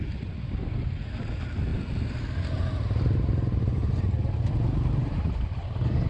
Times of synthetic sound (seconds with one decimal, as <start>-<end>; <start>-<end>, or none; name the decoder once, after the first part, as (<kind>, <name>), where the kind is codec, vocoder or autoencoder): none